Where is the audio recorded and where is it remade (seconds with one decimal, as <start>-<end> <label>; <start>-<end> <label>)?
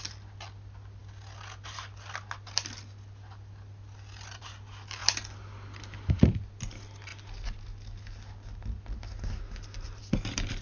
0.0-10.6 recorded